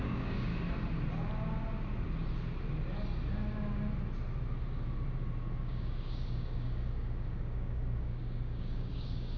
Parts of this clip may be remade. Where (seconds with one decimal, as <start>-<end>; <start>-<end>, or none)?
0.0-0.5; 5.6-9.4